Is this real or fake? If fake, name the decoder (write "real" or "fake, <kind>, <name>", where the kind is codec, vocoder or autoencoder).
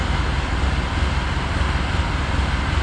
real